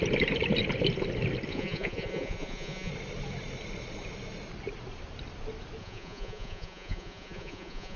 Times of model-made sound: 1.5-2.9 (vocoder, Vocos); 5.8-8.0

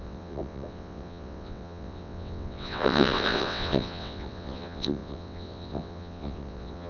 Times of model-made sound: 0.0-6.9 (vocoder, WaveNeXt)

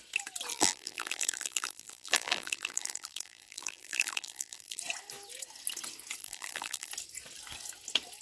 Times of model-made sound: 0.5-4.8 (vocoder, BigVGAN v2); 6.2-6.9

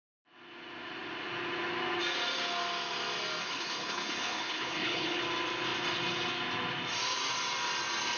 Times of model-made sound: 3.4-5.2 (codec, HILCodec)